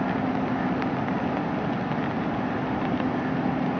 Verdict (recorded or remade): recorded